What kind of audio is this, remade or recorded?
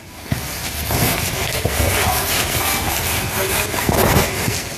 remade